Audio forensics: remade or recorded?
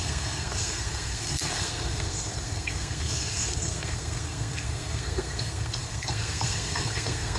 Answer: remade